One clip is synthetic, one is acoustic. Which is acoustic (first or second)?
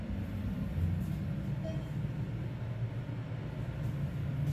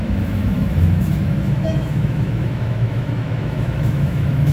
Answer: first